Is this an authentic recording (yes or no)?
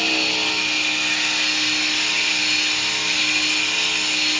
yes